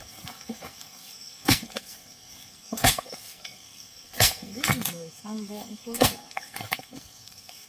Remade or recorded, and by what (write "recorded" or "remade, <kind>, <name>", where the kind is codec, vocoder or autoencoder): remade, codec, SNAC